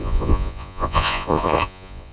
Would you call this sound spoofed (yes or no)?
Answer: yes